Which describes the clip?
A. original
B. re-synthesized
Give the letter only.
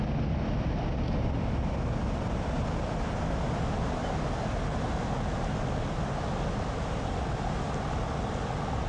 A